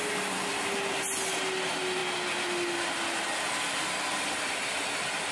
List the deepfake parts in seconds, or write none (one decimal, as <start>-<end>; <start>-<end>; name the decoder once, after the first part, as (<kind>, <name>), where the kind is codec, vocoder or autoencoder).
none